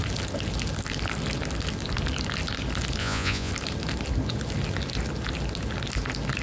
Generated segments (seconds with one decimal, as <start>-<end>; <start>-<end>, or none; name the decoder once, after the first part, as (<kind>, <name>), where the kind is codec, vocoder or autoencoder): 3.0-3.5 (vocoder, Vocos)